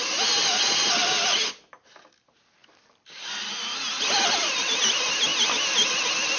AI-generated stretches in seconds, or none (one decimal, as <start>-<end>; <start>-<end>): none